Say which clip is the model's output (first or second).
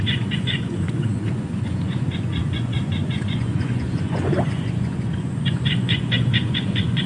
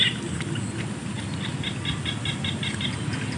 first